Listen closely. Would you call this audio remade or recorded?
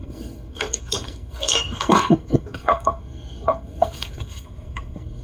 remade